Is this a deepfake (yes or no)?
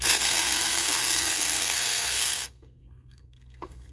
yes